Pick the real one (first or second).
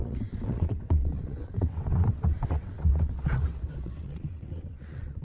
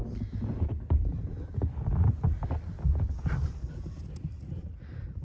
second